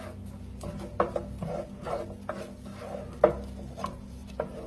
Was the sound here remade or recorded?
recorded